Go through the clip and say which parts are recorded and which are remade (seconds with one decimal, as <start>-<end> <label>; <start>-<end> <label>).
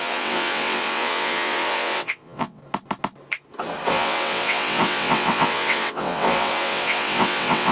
0.0-2.6 remade; 2.6-3.9 recorded; 3.9-7.7 remade